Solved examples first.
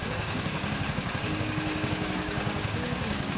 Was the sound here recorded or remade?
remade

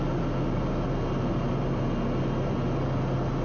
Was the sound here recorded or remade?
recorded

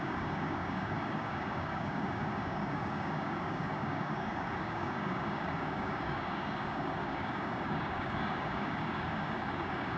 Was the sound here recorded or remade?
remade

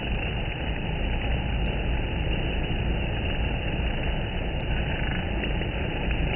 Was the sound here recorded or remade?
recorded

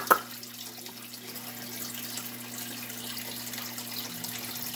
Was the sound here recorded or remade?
recorded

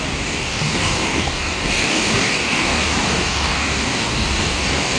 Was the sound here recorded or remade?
remade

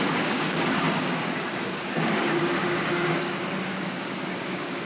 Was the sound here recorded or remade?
remade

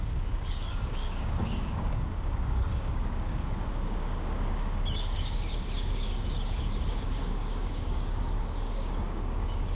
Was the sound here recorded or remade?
remade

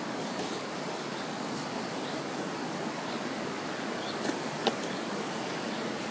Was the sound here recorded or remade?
remade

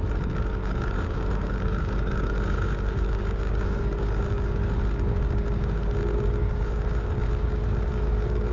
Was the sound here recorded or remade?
remade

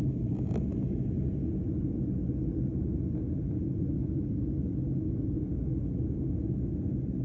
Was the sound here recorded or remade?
recorded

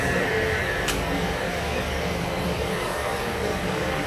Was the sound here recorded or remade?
remade